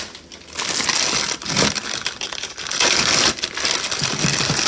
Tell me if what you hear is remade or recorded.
recorded